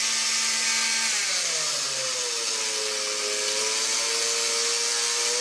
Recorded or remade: recorded